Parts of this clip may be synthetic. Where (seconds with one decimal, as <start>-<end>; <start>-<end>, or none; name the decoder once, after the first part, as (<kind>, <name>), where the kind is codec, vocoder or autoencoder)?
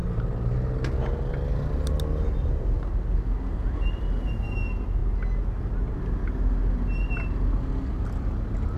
none